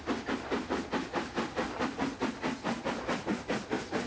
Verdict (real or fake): real